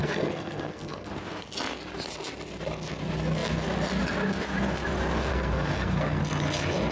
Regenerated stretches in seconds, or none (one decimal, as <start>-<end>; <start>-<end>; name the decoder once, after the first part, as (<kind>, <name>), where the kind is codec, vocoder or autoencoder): 0.0-1.1 (codec, SNAC); 5.3-6.2